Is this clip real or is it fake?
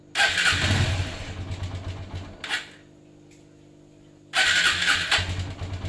real